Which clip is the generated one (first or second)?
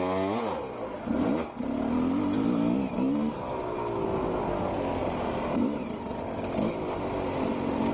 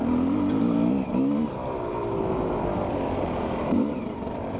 second